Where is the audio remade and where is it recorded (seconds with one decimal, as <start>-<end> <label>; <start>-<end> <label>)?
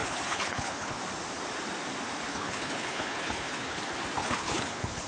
0.0-1.0 remade; 1.0-2.3 recorded; 2.3-3.8 remade; 3.8-4.2 recorded; 4.2-5.1 remade